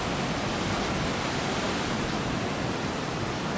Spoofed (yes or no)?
no